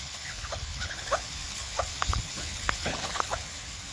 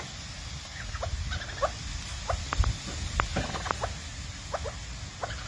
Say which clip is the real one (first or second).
second